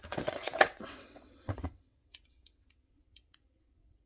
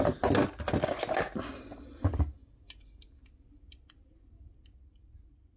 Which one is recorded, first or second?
second